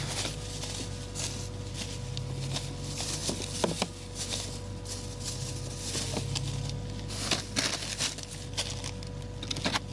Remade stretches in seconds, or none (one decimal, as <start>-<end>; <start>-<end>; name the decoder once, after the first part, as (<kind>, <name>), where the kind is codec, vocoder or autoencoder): none

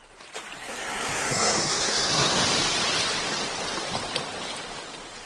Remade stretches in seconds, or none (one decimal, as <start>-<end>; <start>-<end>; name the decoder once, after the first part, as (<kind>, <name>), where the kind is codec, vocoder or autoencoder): 0.6-2.4 (codec, SNAC)

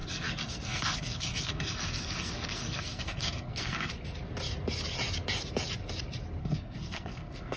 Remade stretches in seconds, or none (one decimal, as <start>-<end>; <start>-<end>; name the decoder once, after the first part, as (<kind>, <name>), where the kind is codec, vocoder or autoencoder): 0.0-3.9 (codec, SNAC); 6.4-7.6